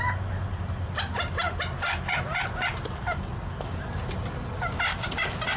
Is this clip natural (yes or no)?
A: yes